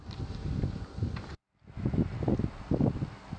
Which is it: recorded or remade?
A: recorded